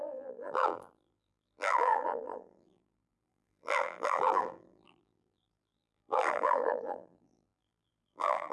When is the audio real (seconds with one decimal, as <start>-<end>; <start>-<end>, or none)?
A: none